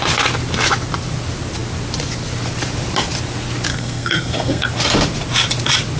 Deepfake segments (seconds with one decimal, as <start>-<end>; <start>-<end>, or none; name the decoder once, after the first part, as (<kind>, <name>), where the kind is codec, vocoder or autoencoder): 3.7-4.7 (codec, SNAC)